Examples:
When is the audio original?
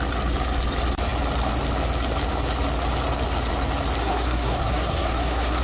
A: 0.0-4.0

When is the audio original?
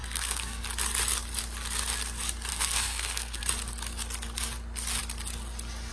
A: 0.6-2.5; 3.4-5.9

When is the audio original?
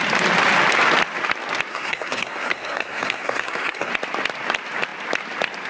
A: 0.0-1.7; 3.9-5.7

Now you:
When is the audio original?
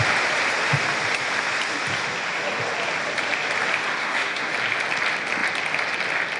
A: 0.0-4.0; 4.5-6.4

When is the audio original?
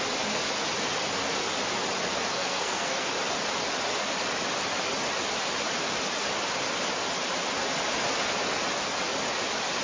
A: 0.0-2.3; 3.1-9.8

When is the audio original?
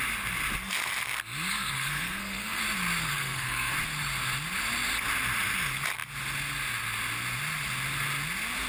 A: 0.0-1.5; 2.6-3.1; 3.7-8.7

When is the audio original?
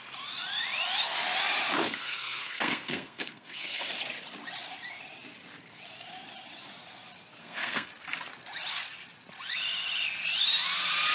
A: 0.0-1.8; 3.9-7.4; 7.9-11.1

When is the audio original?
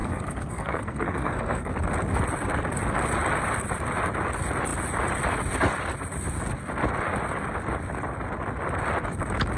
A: 1.7-9.6